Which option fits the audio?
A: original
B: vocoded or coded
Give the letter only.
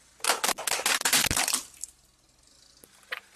A